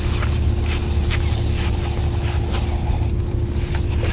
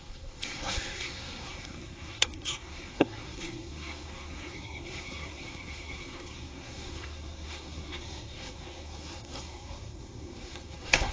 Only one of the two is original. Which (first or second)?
first